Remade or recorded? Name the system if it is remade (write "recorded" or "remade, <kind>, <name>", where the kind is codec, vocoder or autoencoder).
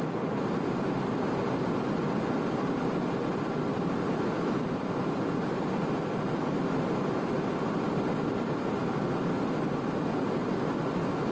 recorded